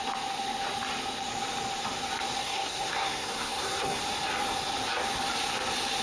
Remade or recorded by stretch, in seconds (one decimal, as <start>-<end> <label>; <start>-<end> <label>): 0.0-2.4 recorded; 2.4-4.0 remade; 4.0-6.0 recorded